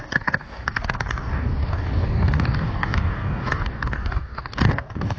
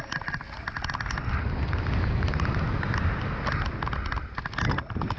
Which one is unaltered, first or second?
second